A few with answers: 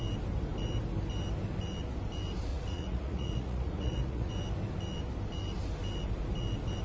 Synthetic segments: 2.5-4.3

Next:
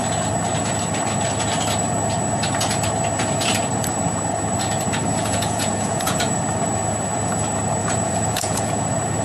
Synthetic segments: 5.2-6.4; 7.8-8.7

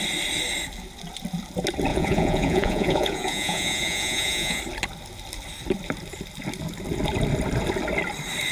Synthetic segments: 1.9-4.6

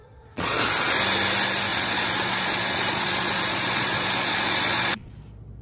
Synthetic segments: 0.0-0.6; 1.7-5.1

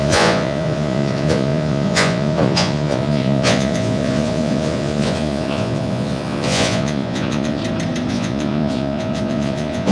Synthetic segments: 0.0-7.6; 8.1-9.9

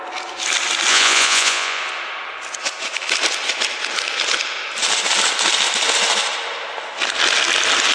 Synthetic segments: 0.9-1.8